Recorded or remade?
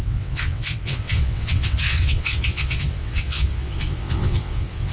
remade